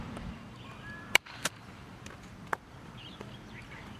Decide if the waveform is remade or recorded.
remade